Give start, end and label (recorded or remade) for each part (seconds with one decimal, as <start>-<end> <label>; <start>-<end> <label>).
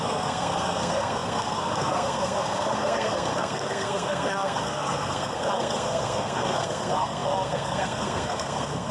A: 0.0-8.9 remade